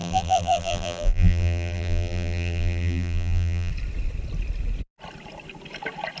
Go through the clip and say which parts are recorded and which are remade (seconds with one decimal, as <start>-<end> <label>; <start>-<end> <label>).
0.0-3.7 remade; 3.7-6.2 recorded